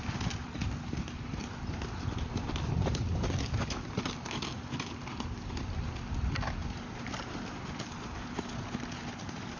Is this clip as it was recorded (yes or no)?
yes